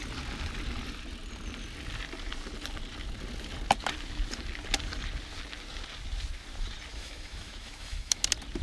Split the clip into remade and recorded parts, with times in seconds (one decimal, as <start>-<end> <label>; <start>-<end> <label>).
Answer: 0.0-6.9 recorded; 6.9-8.2 remade; 8.2-8.6 recorded